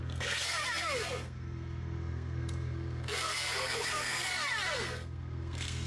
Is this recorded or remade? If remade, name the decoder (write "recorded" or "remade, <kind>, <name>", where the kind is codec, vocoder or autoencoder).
remade, codec, SNAC